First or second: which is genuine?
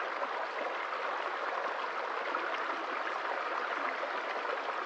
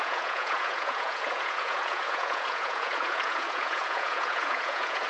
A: first